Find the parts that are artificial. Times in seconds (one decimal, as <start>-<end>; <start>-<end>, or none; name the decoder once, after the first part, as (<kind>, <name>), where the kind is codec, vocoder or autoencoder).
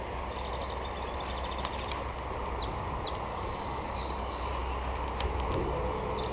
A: 3.3-4.5 (codec, DAC)